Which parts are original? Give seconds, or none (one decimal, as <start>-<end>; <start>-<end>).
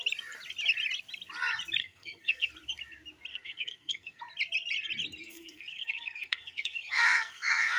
0.0-1.8; 2.5-3.3; 4.2-5.2